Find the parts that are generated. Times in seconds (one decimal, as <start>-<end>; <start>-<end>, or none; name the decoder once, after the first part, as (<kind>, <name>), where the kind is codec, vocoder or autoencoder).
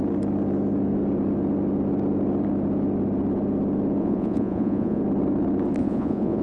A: 4.0-5.0 (vocoder, Vocos); 5.8-6.4